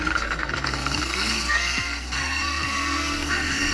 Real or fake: fake